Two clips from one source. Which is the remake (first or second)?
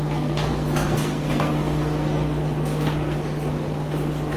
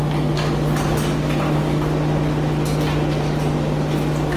first